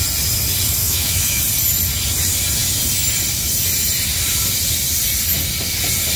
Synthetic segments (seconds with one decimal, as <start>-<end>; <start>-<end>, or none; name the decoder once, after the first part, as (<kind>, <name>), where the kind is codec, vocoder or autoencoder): 0.8-1.4 (autoencoder, DAC-VAE)